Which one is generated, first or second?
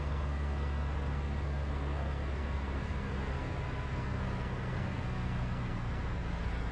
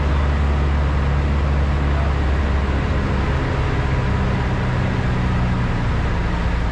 first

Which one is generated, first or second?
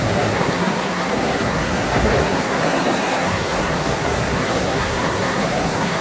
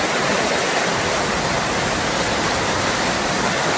first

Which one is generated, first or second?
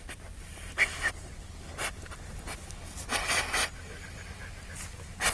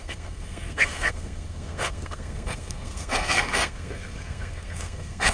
second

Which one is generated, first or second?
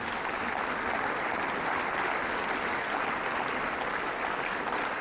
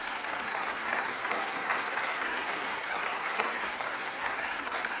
second